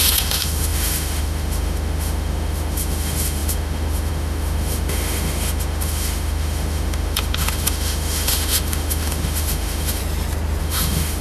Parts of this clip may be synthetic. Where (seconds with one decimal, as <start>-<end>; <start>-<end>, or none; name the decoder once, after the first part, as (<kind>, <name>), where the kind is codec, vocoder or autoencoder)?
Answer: 0.0-10.0 (autoencoder, DAC-VAE); 10.6-11.2